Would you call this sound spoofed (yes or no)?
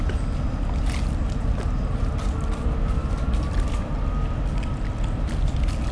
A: no